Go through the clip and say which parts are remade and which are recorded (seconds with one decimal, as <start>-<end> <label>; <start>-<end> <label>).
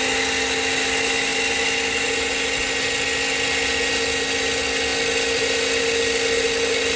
0.0-7.0 recorded